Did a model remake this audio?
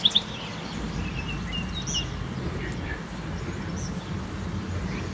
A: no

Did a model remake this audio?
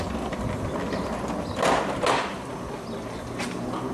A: no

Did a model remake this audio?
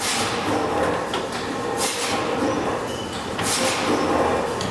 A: no